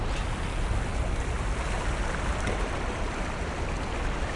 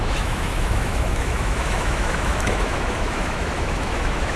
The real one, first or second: first